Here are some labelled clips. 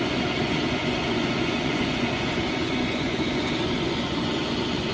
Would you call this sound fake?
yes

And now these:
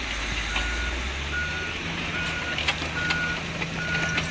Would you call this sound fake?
no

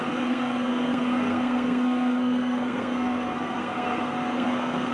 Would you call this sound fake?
yes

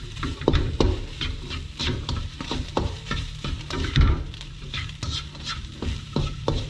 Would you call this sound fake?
yes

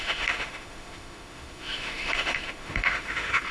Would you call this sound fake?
yes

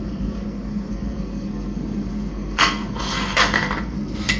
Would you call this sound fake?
yes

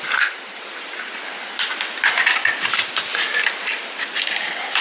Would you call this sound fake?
no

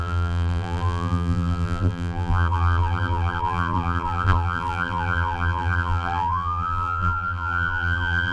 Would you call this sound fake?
yes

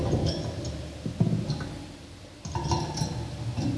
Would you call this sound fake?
no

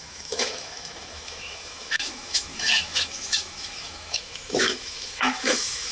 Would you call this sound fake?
yes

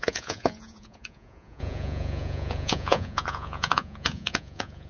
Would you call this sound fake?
yes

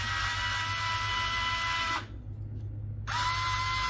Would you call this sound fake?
no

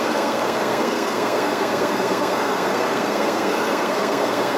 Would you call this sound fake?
yes